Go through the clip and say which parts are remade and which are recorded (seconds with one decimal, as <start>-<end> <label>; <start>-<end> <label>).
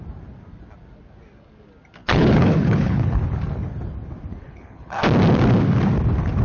0.0-2.0 recorded; 2.0-3.2 remade; 3.2-4.4 recorded; 4.4-5.0 remade; 5.0-6.4 recorded